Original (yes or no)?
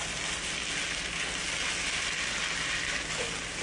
yes